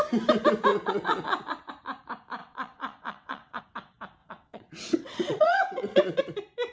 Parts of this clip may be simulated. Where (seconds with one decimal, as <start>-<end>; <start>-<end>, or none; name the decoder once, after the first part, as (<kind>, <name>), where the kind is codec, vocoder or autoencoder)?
0.7-1.7 (vocoder, WaveNeXt); 2.4-3.6; 4.2-6.2

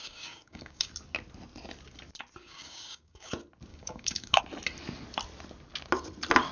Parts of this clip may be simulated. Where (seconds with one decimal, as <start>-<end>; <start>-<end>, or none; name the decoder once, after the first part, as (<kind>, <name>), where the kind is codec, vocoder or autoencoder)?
0.0-0.9 (codec, DAC); 2.4-3.3; 3.7-4.4

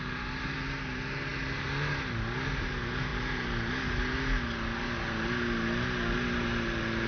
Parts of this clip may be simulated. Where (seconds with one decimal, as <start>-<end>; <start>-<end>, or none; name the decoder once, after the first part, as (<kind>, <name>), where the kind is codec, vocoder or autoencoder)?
none